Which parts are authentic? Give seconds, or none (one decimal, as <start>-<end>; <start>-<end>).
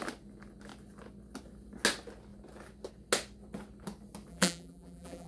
0.0-4.3